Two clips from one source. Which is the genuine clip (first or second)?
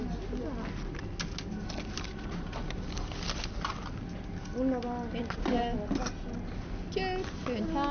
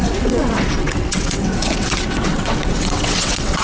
first